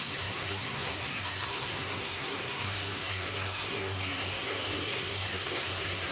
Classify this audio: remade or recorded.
remade